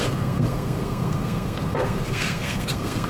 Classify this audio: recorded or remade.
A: remade